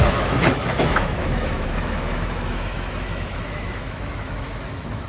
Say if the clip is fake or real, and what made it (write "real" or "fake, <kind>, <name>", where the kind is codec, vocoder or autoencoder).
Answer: fake, autoencoder, DAC-VAE